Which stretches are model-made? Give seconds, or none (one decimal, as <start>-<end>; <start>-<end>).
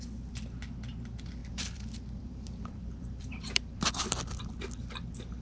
1.4-4.6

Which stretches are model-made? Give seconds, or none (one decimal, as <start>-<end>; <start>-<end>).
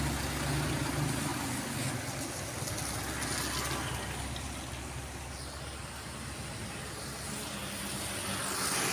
none